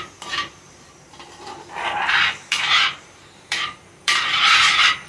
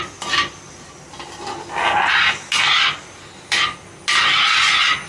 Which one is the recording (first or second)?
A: second